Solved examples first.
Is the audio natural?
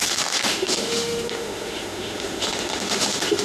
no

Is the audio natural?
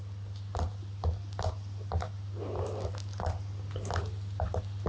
yes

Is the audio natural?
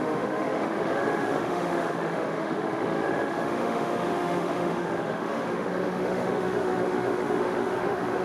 no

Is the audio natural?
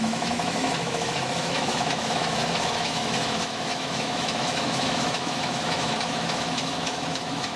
no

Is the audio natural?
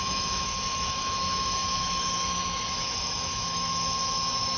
no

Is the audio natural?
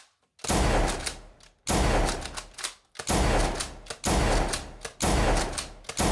yes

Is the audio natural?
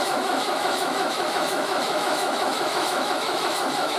no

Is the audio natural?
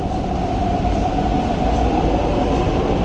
yes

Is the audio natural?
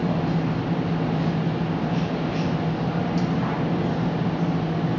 yes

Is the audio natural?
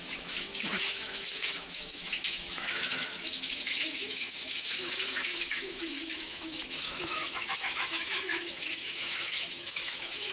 no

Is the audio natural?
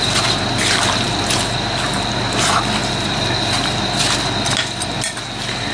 yes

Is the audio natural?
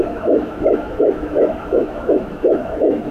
no